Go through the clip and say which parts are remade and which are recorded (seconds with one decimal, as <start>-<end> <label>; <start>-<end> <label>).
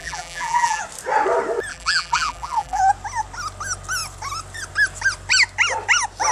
0.0-0.8 remade; 0.8-1.7 recorded; 1.7-2.8 remade; 2.8-6.3 recorded